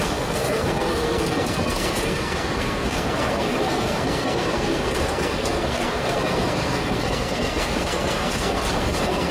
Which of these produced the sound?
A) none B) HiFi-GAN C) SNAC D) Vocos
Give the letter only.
C